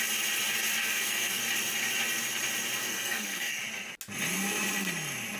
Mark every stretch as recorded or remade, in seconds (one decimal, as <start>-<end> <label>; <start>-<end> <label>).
0.0-0.8 recorded; 0.8-1.4 remade; 1.4-2.8 recorded; 2.8-3.6 remade; 3.6-5.4 recorded